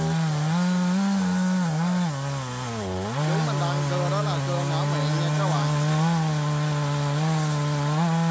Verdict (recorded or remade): recorded